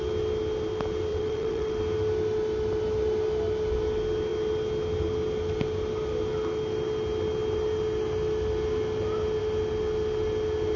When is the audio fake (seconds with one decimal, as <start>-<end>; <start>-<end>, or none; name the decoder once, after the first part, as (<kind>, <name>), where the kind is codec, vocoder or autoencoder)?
1.1-1.7 (vocoder, WaveNeXt)